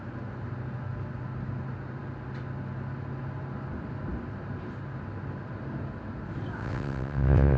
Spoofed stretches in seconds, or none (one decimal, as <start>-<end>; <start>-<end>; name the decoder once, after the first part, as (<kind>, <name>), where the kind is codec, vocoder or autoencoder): 6.6-7.6 (vocoder, WaveNeXt)

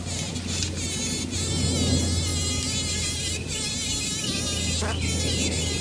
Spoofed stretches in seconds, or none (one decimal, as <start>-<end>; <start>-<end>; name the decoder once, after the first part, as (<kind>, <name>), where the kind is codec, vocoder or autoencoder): none

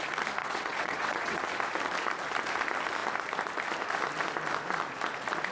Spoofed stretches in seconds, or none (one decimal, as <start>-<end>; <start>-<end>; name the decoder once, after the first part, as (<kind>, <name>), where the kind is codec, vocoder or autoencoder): 0.4-1.4 (vocoder, WaveNeXt)

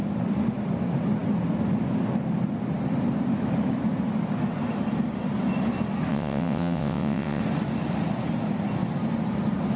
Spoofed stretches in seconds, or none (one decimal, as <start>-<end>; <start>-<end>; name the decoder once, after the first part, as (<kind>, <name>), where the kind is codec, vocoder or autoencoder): 6.1-7.4 (vocoder, WaveNeXt)